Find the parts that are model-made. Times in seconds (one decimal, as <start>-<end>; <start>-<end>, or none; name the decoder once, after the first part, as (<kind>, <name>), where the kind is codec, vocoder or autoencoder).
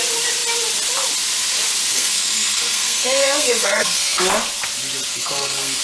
1.9-4.2 (codec, SNAC); 5.1-5.8